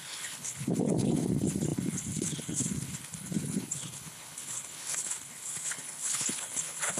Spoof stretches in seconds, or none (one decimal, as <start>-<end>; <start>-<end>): 0.0-7.0